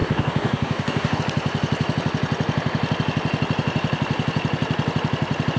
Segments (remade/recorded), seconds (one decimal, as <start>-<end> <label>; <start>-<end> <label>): 0.0-1.2 remade; 1.2-5.6 recorded